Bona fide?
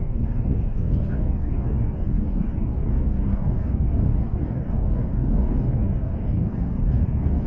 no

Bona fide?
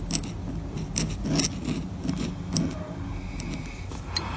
yes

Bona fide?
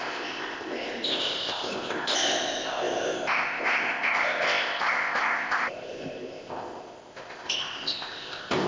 no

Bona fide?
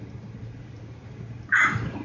yes